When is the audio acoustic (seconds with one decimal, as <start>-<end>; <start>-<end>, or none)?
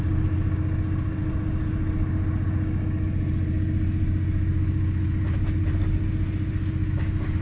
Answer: 0.0-7.4